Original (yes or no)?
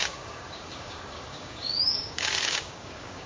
no